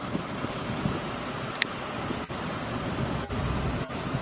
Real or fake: fake